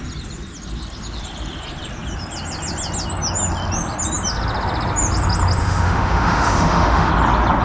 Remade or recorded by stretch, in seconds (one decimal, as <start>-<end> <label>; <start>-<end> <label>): 0.0-5.6 recorded; 5.6-7.1 remade; 7.1-7.6 recorded